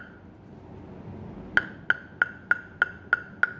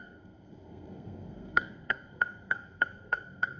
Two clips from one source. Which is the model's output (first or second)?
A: second